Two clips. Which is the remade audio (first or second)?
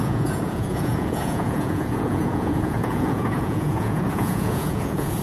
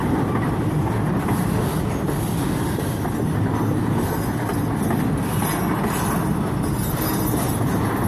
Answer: first